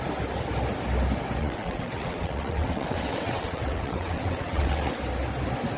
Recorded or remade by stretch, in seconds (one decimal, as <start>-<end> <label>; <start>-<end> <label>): 0.0-1.4 recorded; 1.4-4.9 remade; 4.9-5.8 recorded